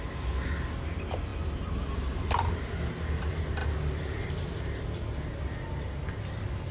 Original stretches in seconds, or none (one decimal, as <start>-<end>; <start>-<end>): 0.0-6.7